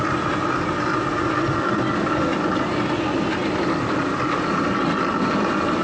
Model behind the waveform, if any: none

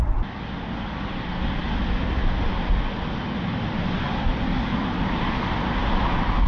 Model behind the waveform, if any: none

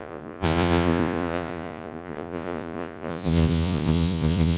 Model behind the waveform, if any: vocoder, Vocos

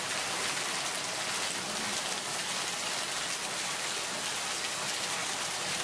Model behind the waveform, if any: none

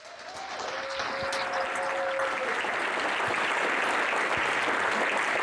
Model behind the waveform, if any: none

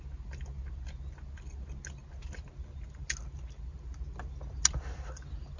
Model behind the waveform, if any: none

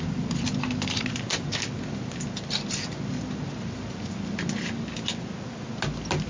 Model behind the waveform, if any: none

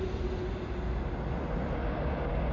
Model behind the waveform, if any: none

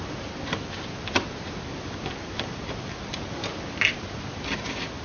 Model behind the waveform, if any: none